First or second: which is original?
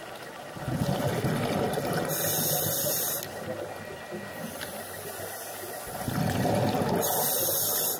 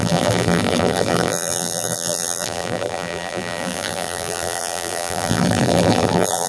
first